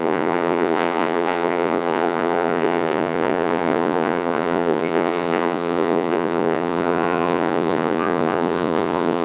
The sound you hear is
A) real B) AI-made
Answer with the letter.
B